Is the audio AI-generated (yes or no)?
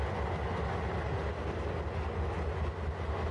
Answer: no